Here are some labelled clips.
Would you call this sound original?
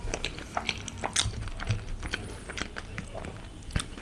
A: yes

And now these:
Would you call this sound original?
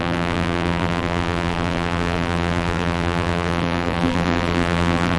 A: no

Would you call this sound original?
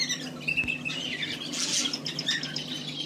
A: yes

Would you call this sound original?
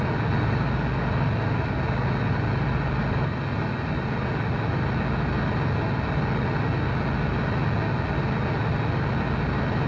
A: yes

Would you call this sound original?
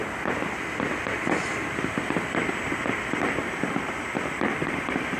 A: yes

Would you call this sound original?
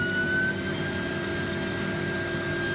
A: yes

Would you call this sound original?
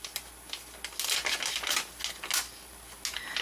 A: yes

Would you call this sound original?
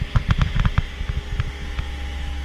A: yes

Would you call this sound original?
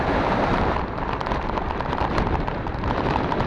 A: yes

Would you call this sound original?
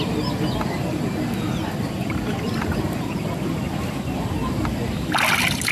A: yes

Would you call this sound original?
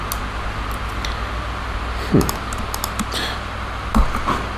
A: yes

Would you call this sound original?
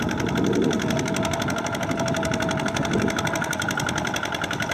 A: yes